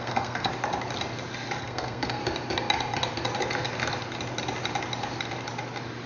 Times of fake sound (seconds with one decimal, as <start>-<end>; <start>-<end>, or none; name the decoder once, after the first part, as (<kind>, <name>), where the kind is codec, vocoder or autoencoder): 0.0-0.5 (codec, SNAC); 1.6-2.2